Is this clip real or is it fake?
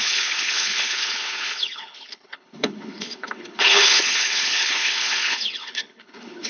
fake